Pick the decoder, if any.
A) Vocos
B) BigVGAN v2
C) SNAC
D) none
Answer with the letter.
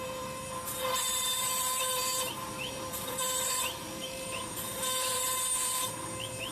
B